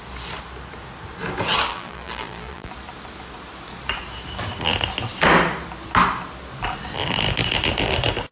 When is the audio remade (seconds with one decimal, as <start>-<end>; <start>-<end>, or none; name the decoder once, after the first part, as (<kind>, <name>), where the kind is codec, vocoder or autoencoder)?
1.7-2.7 (vocoder, BigVGAN v2)